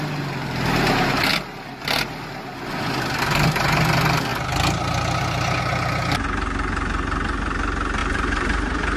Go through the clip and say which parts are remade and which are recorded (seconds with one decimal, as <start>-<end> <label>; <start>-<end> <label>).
0.0-8.0 recorded; 8.0-9.0 remade